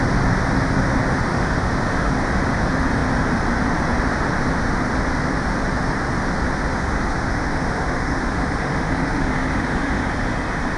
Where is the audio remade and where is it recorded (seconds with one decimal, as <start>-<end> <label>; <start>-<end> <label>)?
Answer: 0.0-1.3 recorded; 1.3-2.1 remade; 2.1-6.7 recorded; 6.7-10.1 remade; 10.1-10.8 recorded